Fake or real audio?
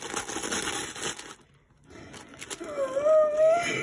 real